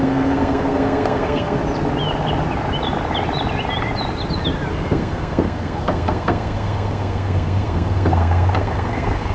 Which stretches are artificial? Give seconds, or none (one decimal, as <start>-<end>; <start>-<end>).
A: 0.0-1.6; 4.7-9.3